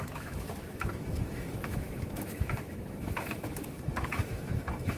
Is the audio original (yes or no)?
no